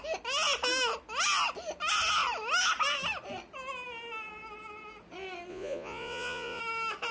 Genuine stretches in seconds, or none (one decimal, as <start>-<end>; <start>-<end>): 0.0-5.5; 6.6-7.1